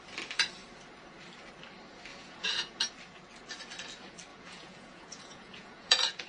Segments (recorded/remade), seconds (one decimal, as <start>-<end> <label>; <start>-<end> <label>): 0.0-2.1 recorded; 2.1-2.8 remade; 2.8-4.3 recorded; 4.3-6.3 remade

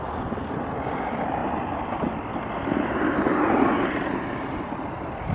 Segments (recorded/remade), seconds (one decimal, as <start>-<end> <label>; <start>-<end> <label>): 0.0-5.3 recorded

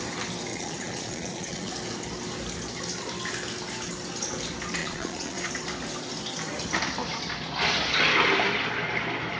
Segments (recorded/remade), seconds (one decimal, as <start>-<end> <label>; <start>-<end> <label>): 0.0-0.5 recorded; 0.5-1.7 remade; 1.7-4.8 recorded; 4.8-5.5 remade; 5.5-9.4 recorded

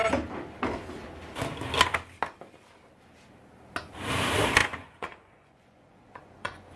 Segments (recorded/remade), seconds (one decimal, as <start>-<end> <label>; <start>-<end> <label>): 0.0-4.6 recorded; 4.6-6.8 remade

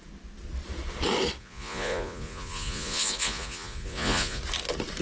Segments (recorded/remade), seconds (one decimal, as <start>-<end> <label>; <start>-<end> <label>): 0.0-1.4 recorded; 1.4-4.4 remade; 4.4-5.0 recorded

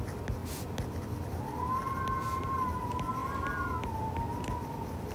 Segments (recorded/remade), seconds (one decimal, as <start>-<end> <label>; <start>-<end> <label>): 0.0-5.1 recorded

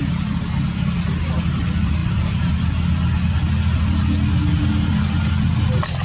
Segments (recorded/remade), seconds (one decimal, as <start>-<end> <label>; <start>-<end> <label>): 0.0-6.0 recorded

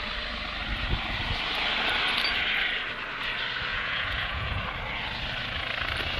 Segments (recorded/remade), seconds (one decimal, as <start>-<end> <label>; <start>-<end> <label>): 0.0-3.7 recorded; 3.7-4.6 remade; 4.6-6.2 recorded